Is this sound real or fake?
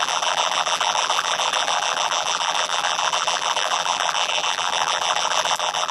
fake